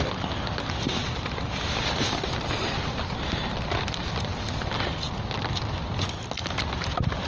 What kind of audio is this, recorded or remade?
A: recorded